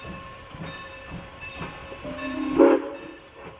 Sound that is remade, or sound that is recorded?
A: remade